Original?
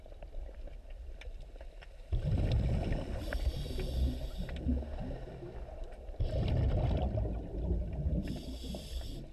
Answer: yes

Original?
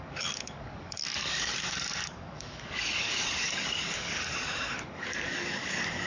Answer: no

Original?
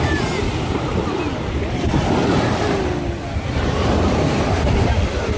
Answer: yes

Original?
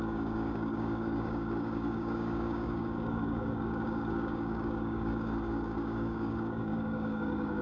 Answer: no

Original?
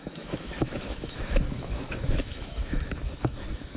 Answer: no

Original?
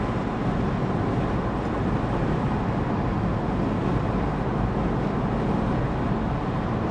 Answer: yes